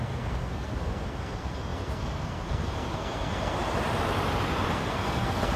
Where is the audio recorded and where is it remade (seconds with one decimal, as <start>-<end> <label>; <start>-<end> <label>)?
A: 0.0-3.6 remade; 3.6-4.7 recorded; 4.7-5.6 remade